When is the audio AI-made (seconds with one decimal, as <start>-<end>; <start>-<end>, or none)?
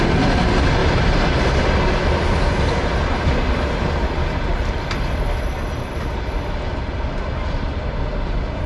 0.8-1.6; 4.5-5.0